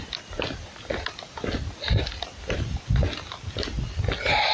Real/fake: real